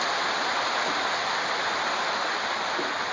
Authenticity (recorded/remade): recorded